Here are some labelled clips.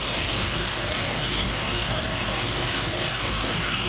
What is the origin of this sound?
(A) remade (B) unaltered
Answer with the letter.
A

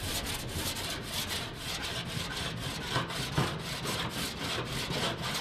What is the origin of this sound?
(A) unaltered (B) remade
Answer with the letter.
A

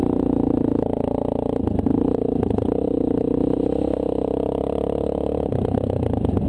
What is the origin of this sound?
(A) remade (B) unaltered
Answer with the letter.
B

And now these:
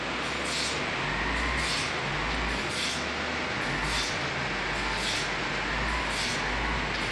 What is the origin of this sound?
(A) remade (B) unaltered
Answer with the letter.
B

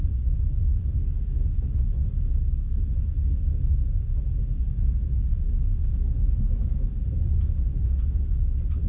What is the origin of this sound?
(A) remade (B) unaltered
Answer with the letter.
B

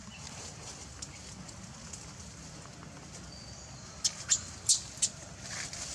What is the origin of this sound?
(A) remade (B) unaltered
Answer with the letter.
B